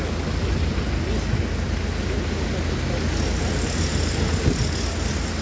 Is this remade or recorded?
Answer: recorded